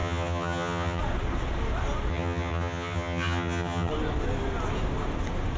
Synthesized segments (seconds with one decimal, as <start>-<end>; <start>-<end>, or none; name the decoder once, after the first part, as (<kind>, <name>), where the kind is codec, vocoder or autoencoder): 0.0-1.0 (vocoder, HiFi-GAN); 2.1-3.9